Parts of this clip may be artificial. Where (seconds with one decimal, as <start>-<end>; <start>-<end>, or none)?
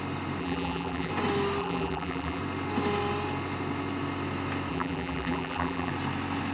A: 0.4-1.1; 1.6-2.4; 4.7-5.9